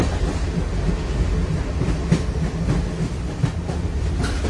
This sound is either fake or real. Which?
real